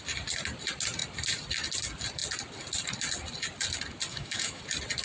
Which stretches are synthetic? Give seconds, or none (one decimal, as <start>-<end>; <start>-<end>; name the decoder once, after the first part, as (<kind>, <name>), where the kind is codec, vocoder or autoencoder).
4.1-4.6 (autoencoder, DAC-VAE)